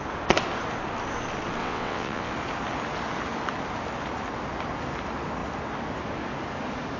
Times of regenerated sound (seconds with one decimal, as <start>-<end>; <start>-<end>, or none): 1.6-2.3